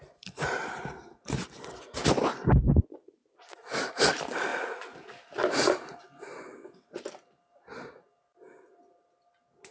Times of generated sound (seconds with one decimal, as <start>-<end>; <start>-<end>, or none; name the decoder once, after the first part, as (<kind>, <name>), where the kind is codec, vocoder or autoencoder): none